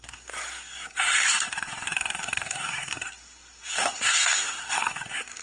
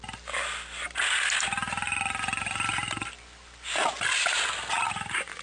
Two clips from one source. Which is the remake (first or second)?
first